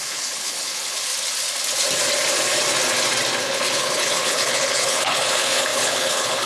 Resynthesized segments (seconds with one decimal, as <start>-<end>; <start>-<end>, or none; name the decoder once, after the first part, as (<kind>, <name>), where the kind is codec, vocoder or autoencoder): 0.0-1.1 (codec, HILCodec); 3.4-6.5